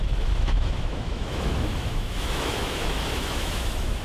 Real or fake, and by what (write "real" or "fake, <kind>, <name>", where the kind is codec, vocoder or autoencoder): fake, autoencoder, DAC-VAE